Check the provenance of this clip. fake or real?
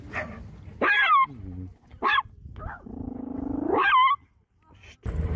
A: real